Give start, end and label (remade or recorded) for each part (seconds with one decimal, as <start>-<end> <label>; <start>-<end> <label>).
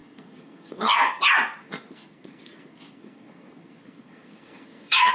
0.0-1.2 remade; 1.2-1.6 recorded; 1.6-5.1 remade